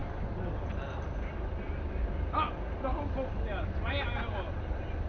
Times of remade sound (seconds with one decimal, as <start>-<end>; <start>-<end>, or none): none